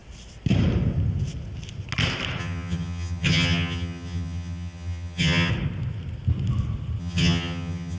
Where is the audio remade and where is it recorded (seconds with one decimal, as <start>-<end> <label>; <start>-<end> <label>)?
0.0-2.4 recorded; 2.4-5.5 remade; 5.5-7.0 recorded; 7.0-8.0 remade